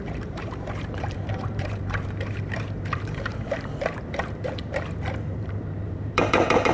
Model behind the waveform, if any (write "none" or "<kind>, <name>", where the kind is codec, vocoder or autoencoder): vocoder, BigVGAN v2